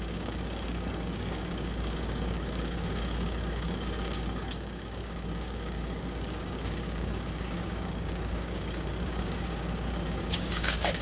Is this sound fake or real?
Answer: fake